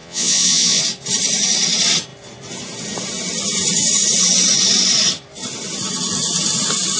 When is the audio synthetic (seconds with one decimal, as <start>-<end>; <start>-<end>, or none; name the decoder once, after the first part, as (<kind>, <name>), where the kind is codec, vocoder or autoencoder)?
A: 0.0-0.8 (vocoder, Vocos)